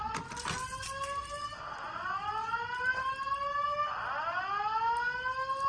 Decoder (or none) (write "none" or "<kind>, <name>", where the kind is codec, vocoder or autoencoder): none